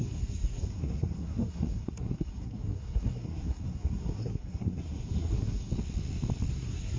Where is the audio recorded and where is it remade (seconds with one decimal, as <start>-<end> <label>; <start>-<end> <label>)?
0.0-5.7 remade; 5.7-6.5 recorded; 6.5-7.0 remade